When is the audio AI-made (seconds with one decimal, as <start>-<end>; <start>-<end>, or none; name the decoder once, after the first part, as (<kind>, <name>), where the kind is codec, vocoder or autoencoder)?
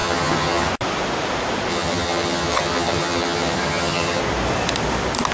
0.0-0.7 (vocoder, HiFi-GAN); 1.7-4.2